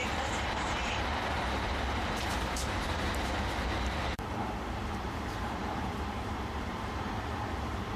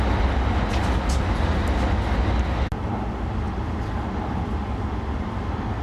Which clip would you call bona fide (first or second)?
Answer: second